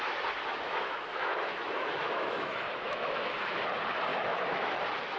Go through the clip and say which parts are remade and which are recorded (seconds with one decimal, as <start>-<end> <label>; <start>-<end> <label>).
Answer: 0.0-0.5 recorded; 0.5-3.6 remade; 3.6-4.1 recorded; 4.1-4.8 remade; 4.8-5.2 recorded